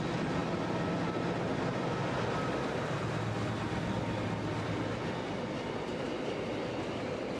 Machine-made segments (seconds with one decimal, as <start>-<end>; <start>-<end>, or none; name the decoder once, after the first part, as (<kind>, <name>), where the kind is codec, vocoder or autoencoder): none